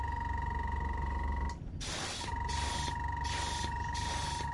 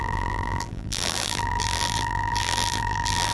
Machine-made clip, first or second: second